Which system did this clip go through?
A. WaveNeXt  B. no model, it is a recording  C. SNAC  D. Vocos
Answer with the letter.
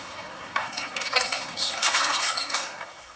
C